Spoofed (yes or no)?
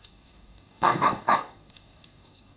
yes